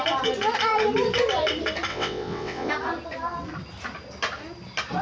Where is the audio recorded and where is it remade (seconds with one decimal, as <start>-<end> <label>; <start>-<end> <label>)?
0.0-1.9 recorded; 1.9-2.7 remade; 2.7-5.0 recorded